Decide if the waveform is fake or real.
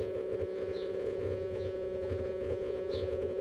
fake